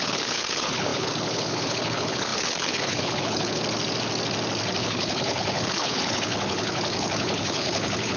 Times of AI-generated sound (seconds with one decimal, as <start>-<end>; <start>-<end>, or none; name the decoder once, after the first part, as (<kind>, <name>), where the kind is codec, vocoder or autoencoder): 0.0-3.6 (codec, HILCodec); 4.8-8.2